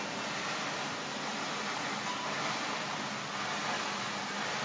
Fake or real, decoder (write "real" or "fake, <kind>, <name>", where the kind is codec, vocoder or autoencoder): real